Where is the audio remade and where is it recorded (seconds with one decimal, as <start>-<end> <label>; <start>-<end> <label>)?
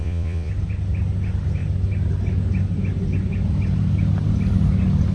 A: 0.0-0.5 remade; 0.5-5.1 recorded